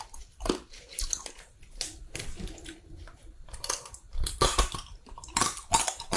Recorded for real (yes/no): yes